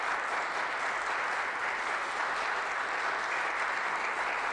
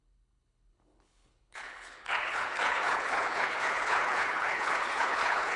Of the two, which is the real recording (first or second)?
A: first